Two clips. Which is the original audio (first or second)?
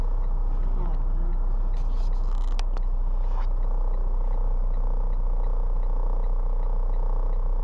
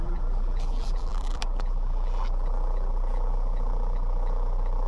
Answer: first